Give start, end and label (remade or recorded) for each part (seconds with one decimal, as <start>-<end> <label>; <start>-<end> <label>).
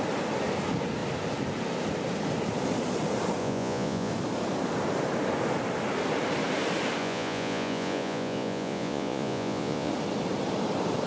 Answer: 0.0-3.4 recorded; 3.4-4.1 remade; 4.1-7.0 recorded; 7.0-9.9 remade; 9.9-11.1 recorded